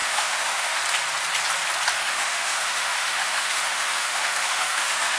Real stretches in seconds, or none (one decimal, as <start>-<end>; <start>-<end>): 0.8-2.0